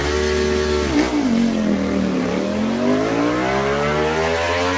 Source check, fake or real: real